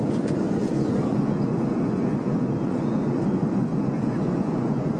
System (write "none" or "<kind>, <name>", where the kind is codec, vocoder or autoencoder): vocoder, Vocos